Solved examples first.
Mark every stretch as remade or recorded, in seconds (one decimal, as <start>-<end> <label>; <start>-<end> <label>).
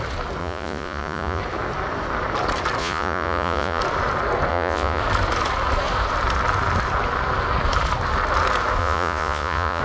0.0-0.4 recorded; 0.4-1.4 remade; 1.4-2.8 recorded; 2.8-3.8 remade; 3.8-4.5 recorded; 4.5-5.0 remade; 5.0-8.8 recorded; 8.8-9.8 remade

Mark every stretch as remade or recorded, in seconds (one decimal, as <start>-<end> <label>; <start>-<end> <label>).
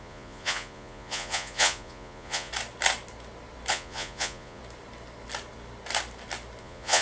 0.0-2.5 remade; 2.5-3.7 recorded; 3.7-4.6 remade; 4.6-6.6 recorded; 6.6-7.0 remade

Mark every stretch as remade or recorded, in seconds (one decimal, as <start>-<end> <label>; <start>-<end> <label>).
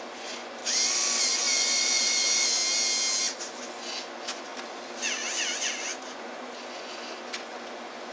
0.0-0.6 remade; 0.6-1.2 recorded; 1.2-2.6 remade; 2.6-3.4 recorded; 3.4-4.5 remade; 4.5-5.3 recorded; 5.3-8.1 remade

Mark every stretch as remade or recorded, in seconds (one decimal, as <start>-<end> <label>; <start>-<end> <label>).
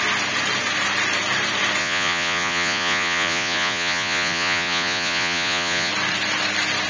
0.0-1.8 recorded; 1.8-5.9 remade; 5.9-6.9 recorded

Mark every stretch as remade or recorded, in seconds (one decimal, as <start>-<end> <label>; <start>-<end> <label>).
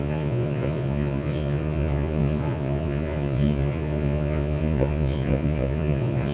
0.0-6.3 remade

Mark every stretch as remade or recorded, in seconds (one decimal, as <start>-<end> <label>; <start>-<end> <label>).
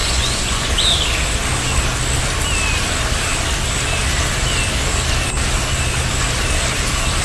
0.0-0.7 remade; 0.7-7.2 recorded